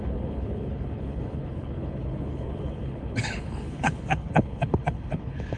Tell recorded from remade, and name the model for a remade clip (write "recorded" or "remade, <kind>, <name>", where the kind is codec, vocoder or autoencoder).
remade, codec, HILCodec